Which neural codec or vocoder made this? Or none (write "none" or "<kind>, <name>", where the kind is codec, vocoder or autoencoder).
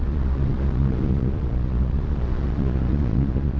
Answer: vocoder, Vocos